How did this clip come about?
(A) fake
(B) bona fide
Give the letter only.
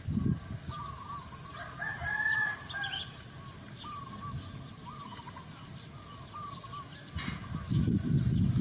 B